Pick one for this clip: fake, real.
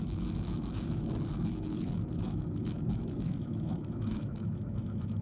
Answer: fake